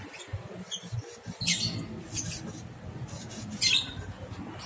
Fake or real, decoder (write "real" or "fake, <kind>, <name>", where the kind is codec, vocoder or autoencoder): real